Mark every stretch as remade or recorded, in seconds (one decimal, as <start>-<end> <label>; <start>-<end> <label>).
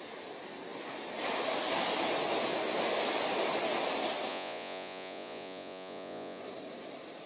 0.0-4.3 recorded; 4.3-6.4 remade; 6.4-7.3 recorded